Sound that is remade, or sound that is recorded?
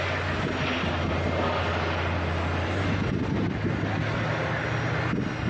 recorded